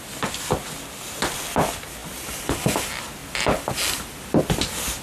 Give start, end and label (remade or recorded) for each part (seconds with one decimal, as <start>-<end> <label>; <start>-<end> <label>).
0.0-5.0 recorded